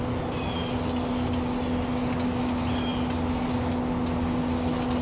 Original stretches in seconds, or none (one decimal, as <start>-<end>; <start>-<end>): 0.0-5.0